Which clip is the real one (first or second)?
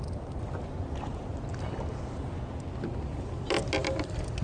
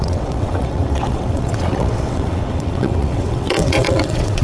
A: first